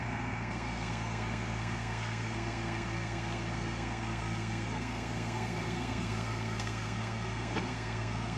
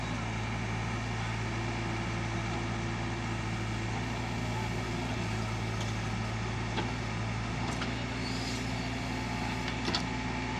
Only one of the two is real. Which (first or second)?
second